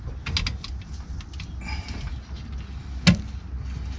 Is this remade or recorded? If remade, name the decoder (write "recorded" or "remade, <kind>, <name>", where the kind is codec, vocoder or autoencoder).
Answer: recorded